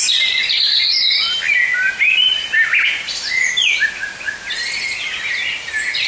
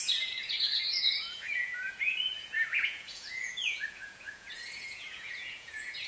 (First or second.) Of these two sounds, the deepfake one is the second